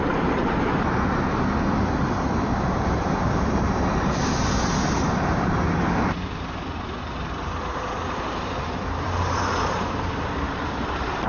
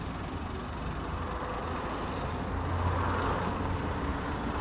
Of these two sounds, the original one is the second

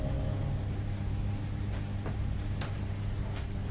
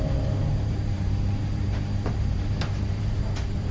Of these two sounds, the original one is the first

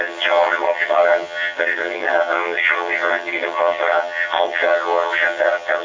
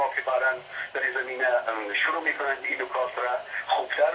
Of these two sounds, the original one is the second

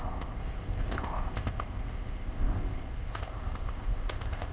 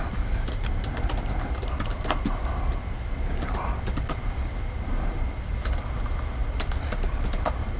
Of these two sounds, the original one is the second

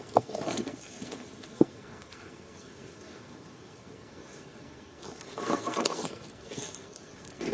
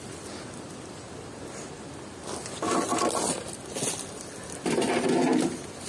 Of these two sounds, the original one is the second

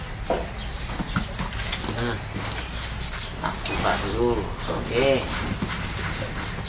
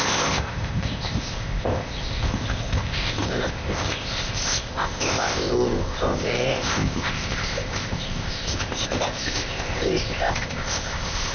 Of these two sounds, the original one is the first